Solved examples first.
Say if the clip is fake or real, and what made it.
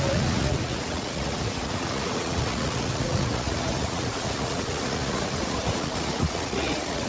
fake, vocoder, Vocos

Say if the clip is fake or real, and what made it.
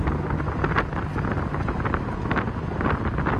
real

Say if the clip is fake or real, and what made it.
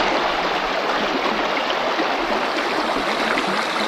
real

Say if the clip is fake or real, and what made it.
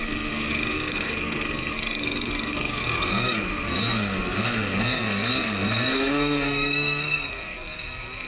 fake, codec, SNAC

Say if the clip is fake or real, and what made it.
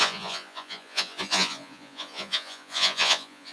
fake, vocoder, Vocos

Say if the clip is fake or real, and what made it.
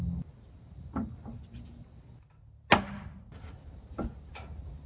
real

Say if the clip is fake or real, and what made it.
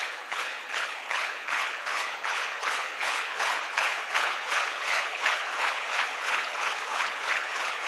fake, codec, HILCodec